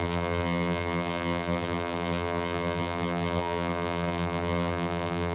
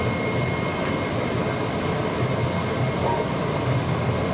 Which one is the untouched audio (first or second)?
second